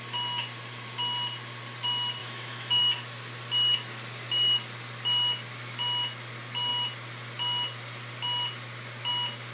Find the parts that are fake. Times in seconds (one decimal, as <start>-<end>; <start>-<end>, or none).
2.2-2.8